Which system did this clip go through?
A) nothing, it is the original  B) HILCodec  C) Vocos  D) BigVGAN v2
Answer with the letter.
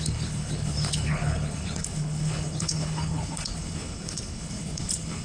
B